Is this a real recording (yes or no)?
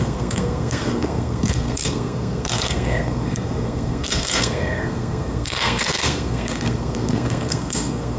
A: no